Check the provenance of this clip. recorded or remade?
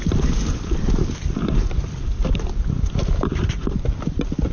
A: recorded